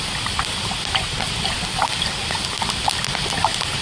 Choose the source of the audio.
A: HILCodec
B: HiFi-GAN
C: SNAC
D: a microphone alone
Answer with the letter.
D